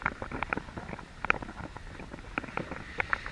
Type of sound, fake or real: real